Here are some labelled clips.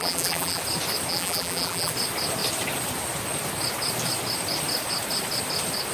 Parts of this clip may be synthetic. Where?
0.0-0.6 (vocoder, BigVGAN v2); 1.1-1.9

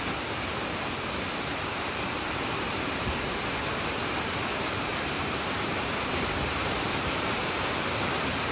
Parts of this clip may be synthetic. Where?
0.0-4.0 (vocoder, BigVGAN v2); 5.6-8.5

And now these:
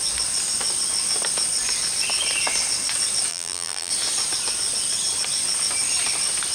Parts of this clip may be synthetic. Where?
3.3-3.9 (vocoder, BigVGAN v2)

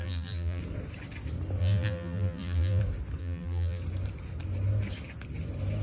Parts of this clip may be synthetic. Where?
0.0-0.6 (vocoder, BigVGAN v2); 1.6-2.8; 3.2-3.8

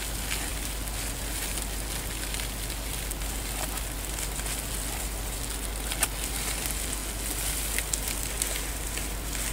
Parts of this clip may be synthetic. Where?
none

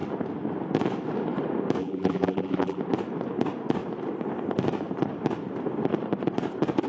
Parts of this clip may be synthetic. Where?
1.8-2.8 (vocoder, BigVGAN v2)